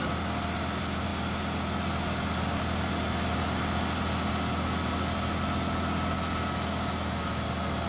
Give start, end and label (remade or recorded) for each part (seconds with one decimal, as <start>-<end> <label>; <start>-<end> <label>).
0.0-7.9 recorded